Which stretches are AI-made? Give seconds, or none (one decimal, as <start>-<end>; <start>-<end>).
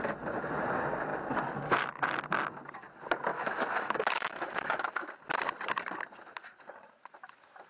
3.3-5.1